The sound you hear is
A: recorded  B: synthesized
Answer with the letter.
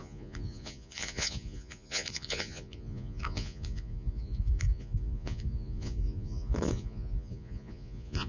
B